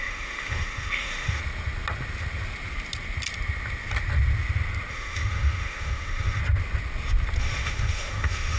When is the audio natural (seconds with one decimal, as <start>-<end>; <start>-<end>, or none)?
1.4-4.9; 6.4-7.4